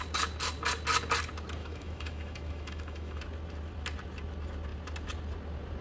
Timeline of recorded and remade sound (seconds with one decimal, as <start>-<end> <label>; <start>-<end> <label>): 0.0-1.6 recorded; 1.6-3.2 remade; 3.2-5.8 recorded